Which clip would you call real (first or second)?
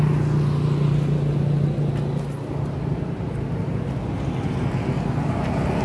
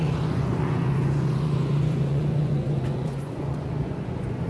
first